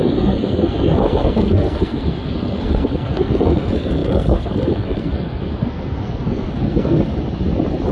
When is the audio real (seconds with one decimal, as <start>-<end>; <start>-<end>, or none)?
7.1-7.9